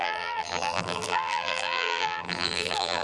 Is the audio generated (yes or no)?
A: yes